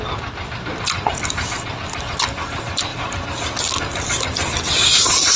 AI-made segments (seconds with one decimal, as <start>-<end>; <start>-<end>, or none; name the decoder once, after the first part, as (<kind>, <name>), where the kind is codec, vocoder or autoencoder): 2.9-3.6 (vocoder, BigVGAN v2)

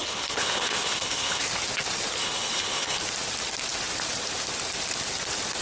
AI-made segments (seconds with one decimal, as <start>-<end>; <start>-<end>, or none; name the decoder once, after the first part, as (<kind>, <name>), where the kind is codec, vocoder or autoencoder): 0.0-1.4 (codec, HILCodec); 2.2-3.0

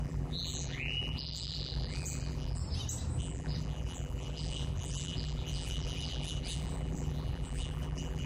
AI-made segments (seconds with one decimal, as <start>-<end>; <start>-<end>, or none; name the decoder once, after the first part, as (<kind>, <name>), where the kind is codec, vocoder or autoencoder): 0.0-2.6 (vocoder, BigVGAN v2); 3.2-8.3

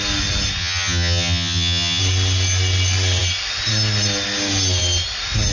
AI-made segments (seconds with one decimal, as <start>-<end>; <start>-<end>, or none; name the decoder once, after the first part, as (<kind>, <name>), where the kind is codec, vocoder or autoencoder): 0.6-2.0 (vocoder, HiFi-GAN)